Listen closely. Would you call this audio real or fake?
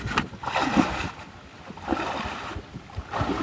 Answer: real